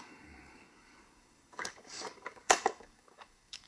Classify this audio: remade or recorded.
remade